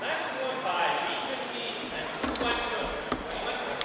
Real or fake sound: real